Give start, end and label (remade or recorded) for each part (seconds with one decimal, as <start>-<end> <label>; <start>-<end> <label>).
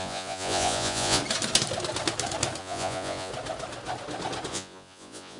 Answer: 0.0-1.2 remade; 1.2-2.6 recorded; 2.6-3.3 remade; 3.3-4.5 recorded; 4.5-5.4 remade